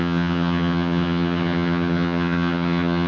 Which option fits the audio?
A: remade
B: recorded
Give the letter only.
A